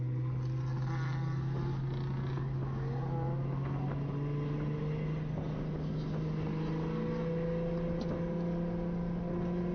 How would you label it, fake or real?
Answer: real